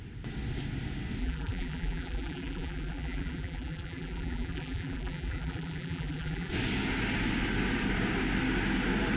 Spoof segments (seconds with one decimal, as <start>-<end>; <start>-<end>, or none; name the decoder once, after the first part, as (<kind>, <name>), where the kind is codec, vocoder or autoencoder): 1.2-6.5 (vocoder, BigVGAN v2)

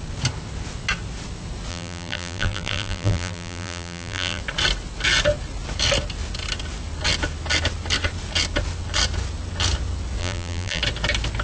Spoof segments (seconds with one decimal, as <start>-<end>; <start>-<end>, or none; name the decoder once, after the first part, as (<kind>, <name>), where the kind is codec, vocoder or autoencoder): 1.7-4.4 (vocoder, BigVGAN v2); 10.2-10.8